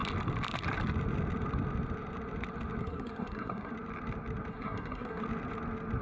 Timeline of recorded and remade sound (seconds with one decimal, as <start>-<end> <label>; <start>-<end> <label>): 0.0-2.8 recorded; 2.8-3.7 remade; 3.7-4.5 recorded; 4.5-5.2 remade; 5.2-6.0 recorded